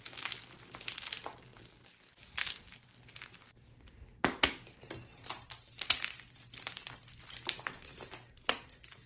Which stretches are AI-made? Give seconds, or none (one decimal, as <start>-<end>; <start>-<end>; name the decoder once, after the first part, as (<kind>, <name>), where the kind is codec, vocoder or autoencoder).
none